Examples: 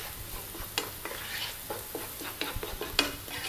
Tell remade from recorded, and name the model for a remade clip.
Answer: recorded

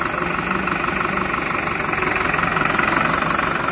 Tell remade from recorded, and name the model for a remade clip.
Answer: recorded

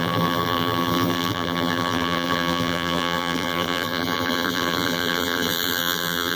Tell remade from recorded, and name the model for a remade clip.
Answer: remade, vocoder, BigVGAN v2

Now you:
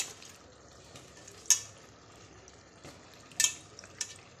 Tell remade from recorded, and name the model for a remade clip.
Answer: recorded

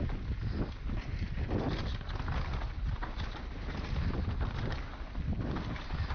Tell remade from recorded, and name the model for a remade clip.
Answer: recorded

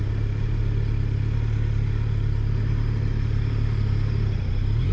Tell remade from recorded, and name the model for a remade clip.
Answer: recorded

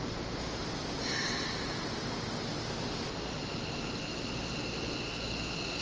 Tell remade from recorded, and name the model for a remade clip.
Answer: recorded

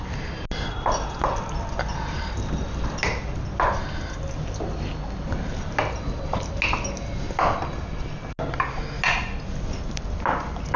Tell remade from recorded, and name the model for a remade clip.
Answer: recorded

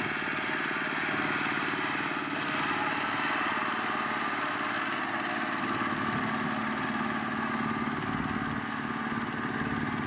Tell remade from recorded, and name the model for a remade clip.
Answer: recorded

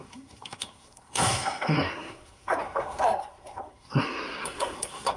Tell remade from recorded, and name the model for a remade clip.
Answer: remade, codec, SNAC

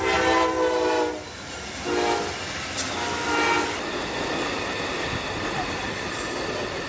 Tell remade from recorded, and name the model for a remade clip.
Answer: recorded